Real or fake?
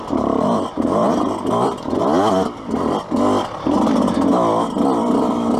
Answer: real